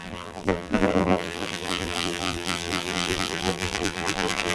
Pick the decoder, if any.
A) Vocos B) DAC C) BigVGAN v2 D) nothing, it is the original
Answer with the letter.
C